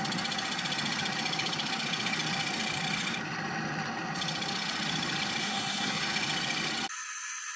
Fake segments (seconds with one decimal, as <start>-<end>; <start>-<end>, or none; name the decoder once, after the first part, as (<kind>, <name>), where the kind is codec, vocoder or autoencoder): 5.4-6.0 (codec, SNAC)